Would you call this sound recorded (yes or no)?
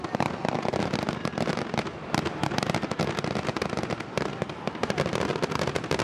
yes